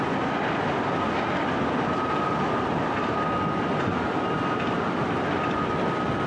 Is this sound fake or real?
real